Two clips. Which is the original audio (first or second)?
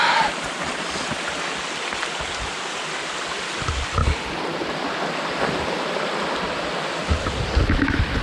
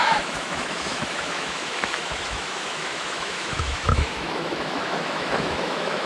first